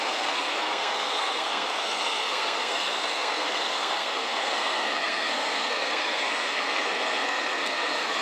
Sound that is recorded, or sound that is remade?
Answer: remade